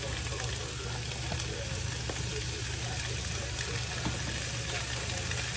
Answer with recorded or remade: recorded